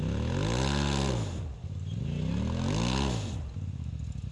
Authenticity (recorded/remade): recorded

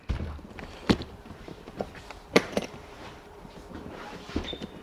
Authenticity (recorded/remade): remade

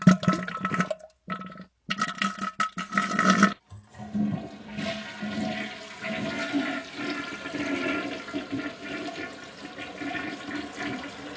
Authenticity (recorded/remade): recorded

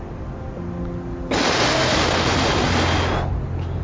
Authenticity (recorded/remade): recorded